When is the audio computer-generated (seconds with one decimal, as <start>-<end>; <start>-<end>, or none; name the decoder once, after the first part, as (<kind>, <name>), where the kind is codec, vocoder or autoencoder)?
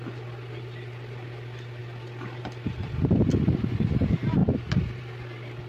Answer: none